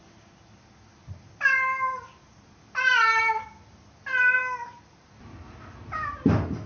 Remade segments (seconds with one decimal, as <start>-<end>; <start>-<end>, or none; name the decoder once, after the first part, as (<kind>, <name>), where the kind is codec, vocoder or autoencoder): none